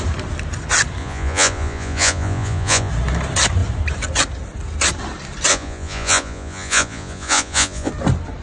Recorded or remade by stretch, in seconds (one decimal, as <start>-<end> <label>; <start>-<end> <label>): 0.0-1.0 recorded; 1.0-2.9 remade; 2.9-5.5 recorded; 5.5-7.9 remade; 7.9-8.4 recorded